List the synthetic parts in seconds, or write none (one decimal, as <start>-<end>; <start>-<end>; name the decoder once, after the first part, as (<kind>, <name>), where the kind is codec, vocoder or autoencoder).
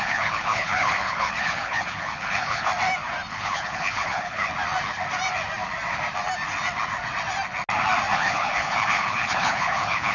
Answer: 0.0-2.7 (codec, HILCodec); 3.3-4.5; 8.1-10.1